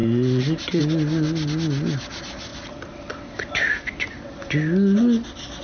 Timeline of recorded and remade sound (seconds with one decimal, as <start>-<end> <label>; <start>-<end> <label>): 0.0-0.8 remade; 0.8-5.6 recorded